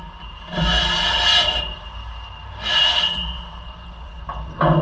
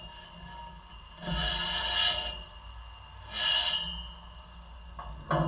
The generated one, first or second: first